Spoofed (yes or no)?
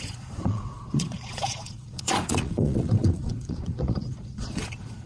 yes